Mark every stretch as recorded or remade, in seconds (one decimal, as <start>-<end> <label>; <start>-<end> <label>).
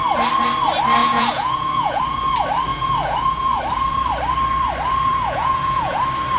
0.0-1.0 recorded; 1.0-2.0 remade; 2.0-2.7 recorded; 2.7-3.6 remade; 3.6-5.1 recorded; 5.1-6.0 remade; 6.0-6.4 recorded